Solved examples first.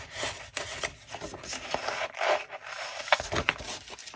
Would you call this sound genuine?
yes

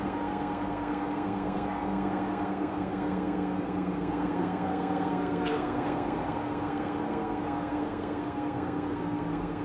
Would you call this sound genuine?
no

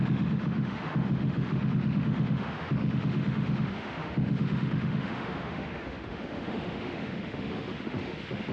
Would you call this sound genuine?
no